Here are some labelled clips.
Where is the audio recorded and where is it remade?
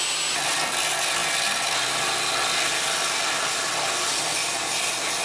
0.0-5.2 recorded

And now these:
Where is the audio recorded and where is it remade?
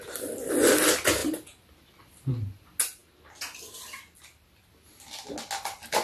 0.0-6.0 recorded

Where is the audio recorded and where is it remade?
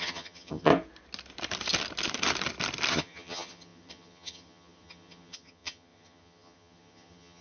0.0-0.7 remade; 0.7-2.9 recorded; 2.9-7.4 remade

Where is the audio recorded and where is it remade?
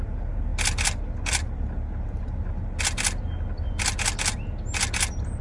0.0-5.4 recorded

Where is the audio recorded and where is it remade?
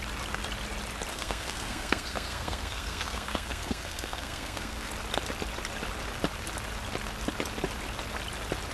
0.0-1.1 recorded; 1.1-4.9 remade; 4.9-8.7 recorded